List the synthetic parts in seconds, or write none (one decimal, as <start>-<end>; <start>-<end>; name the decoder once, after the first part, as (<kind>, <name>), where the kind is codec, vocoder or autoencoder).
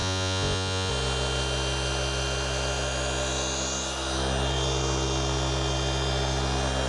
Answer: 0.0-0.9 (vocoder, Vocos)